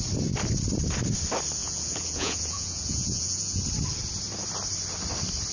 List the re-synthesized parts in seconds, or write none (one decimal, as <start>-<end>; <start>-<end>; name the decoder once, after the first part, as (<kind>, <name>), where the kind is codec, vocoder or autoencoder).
1.6-3.6 (vocoder, Vocos)